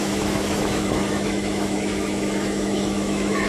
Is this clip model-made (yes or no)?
yes